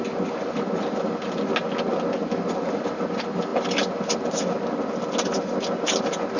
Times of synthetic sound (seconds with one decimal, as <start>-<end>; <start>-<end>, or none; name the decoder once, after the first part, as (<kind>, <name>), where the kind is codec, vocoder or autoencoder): none